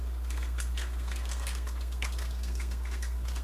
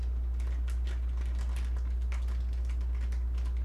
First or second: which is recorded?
second